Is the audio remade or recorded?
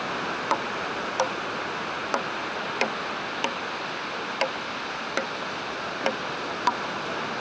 recorded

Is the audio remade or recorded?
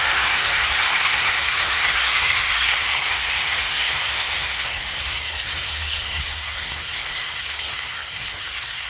remade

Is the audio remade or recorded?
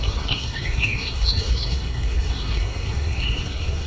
remade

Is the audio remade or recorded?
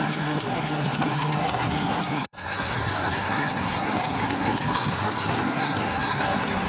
remade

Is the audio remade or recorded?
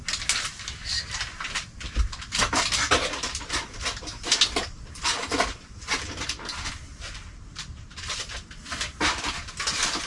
recorded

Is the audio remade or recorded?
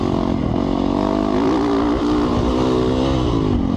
recorded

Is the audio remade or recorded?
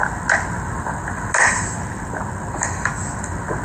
recorded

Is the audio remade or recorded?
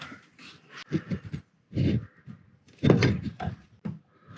recorded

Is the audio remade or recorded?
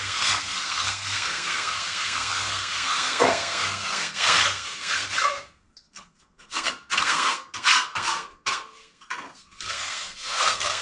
remade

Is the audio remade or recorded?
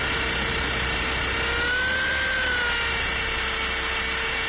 recorded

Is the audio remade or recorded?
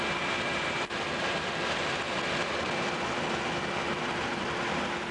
recorded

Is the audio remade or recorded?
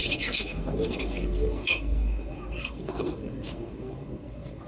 remade